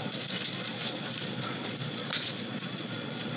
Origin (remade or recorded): remade